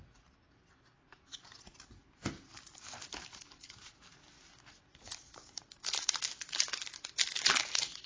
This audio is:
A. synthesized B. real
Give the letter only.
B